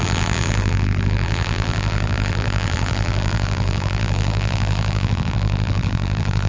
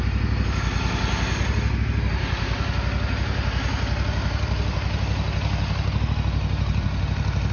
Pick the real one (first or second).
second